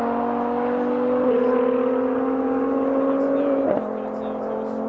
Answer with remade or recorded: recorded